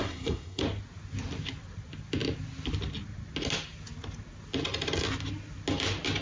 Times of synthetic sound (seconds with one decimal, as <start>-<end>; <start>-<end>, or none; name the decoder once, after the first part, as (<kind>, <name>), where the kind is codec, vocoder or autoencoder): 0.0-0.6 (codec, SNAC)